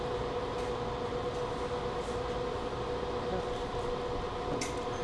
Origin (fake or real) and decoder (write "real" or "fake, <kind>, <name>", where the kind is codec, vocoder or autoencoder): real